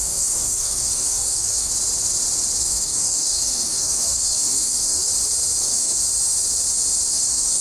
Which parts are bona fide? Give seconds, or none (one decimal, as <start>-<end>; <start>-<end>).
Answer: 1.7-2.6; 5.1-5.6; 6.0-7.1

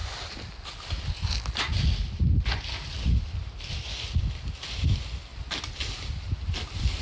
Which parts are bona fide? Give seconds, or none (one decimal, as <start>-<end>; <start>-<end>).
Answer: 0.0-7.0